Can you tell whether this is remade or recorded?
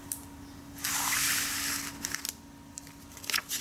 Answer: recorded